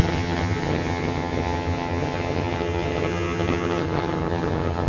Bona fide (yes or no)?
no